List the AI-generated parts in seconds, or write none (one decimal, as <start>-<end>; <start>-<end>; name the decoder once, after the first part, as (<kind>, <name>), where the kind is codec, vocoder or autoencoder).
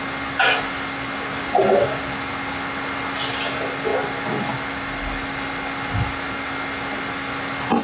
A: none